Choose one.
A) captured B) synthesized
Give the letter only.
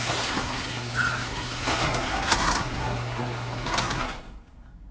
B